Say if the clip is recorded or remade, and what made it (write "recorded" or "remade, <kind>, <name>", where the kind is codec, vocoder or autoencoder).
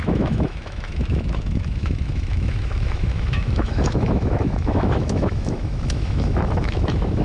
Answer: remade, autoencoder, DAC-VAE